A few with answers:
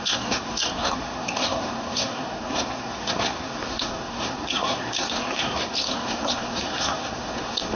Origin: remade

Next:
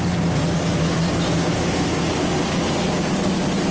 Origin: recorded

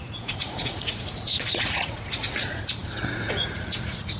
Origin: remade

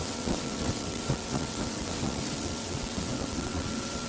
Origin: remade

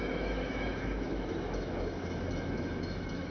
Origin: remade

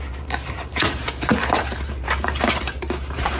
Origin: remade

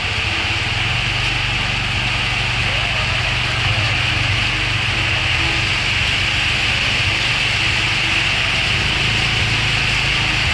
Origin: recorded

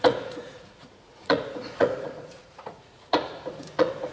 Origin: remade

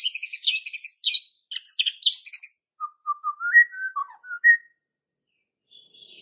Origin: recorded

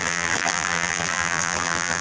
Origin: remade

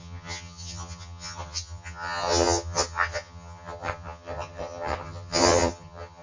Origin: remade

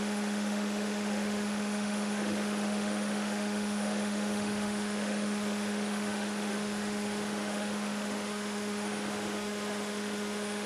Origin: remade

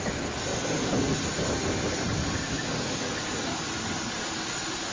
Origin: recorded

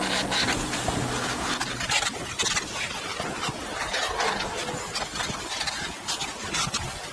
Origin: recorded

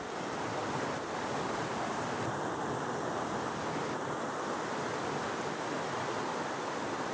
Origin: recorded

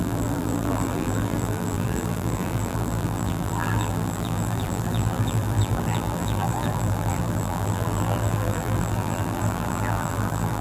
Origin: remade